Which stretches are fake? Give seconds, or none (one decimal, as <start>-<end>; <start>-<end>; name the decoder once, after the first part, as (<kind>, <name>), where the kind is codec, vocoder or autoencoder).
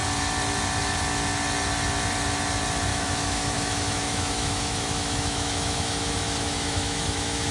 2.9-7.5 (autoencoder, DAC-VAE)